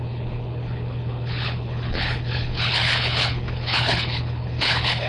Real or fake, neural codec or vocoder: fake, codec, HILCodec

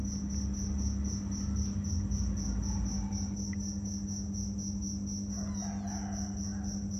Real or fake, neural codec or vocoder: real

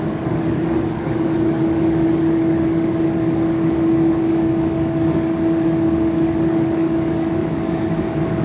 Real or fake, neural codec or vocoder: fake, codec, DAC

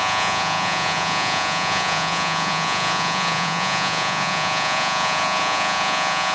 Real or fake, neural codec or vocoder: fake, vocoder, Vocos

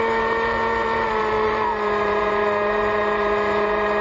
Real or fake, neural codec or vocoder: fake, vocoder, BigVGAN v2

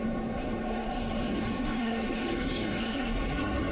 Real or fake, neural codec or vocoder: fake, codec, SNAC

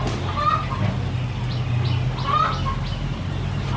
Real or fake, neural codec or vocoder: real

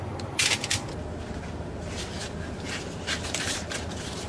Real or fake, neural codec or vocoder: real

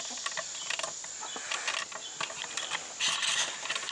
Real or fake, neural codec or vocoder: real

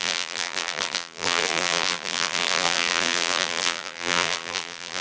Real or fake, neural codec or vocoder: fake, vocoder, BigVGAN v2